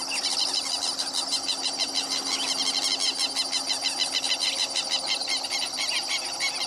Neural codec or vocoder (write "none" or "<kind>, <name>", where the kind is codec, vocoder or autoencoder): none